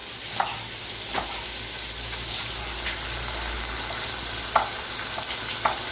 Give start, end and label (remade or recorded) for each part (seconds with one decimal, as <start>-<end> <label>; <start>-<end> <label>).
0.0-5.9 recorded